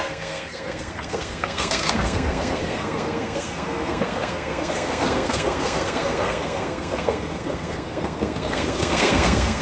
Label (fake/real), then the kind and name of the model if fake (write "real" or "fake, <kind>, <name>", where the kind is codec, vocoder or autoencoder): fake, codec, SNAC